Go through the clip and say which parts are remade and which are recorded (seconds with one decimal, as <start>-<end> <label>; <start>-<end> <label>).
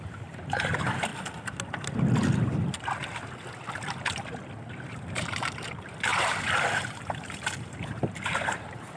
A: 0.0-1.1 remade; 1.1-4.9 recorded; 4.9-9.0 remade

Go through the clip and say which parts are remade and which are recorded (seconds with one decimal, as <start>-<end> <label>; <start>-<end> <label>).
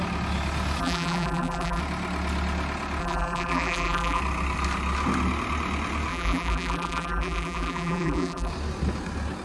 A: 0.0-0.8 recorded; 0.8-1.8 remade; 1.8-3.0 recorded; 3.0-4.2 remade; 4.2-6.1 recorded; 6.1-8.5 remade; 8.5-9.4 recorded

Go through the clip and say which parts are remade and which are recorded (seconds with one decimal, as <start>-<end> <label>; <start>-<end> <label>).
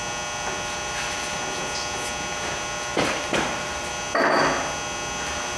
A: 0.0-2.9 recorded; 2.9-3.9 remade; 3.9-5.6 recorded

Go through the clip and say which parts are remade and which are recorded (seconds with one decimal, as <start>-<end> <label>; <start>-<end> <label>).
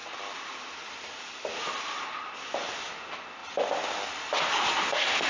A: 0.0-5.3 recorded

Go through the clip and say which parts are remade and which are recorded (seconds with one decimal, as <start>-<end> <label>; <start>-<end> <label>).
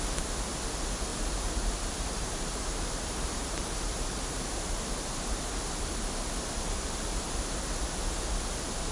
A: 0.0-1.1 recorded; 1.1-4.9 remade; 4.9-8.9 recorded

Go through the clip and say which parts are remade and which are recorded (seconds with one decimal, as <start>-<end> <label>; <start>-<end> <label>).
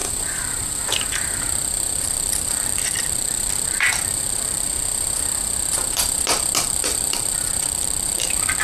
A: 0.0-2.0 recorded; 2.0-4.7 remade; 4.7-6.6 recorded; 6.6-8.6 remade